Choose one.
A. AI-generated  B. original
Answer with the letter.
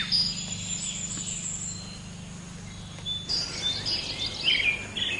B